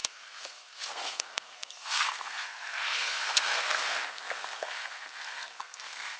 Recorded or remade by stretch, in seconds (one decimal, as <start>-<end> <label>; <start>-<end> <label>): 0.0-6.2 remade